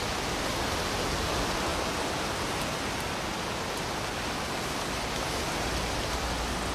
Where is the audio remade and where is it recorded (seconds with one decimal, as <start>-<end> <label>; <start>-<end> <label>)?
0.0-6.7 recorded